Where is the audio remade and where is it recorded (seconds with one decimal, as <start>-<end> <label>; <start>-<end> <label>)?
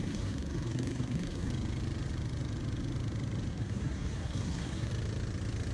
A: 0.0-1.5 remade; 1.5-3.5 recorded; 3.5-4.9 remade; 4.9-5.7 recorded